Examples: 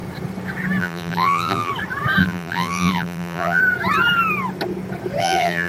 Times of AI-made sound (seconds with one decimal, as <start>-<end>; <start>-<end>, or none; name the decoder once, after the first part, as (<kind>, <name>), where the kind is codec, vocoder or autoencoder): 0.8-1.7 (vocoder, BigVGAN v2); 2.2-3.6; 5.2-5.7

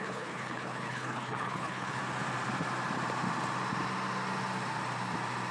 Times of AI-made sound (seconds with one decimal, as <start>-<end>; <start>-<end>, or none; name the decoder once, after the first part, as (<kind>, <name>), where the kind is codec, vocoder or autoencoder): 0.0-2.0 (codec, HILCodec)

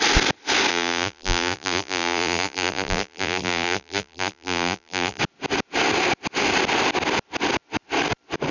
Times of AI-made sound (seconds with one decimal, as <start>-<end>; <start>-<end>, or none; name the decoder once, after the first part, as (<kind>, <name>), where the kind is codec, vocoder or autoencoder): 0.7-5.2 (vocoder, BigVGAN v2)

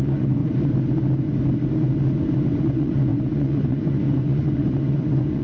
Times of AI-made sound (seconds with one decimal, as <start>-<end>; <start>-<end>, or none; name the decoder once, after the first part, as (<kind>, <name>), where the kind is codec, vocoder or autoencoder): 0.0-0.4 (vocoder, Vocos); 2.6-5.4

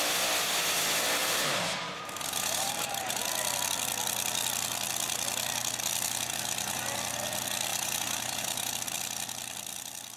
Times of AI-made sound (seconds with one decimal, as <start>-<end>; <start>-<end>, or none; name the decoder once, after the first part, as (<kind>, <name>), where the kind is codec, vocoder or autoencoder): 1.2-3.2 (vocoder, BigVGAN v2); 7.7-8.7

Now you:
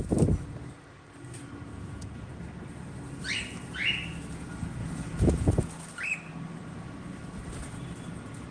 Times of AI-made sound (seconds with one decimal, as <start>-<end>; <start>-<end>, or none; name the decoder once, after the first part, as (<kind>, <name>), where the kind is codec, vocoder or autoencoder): 1.7-2.3 (vocoder, Vocos); 4.8-5.5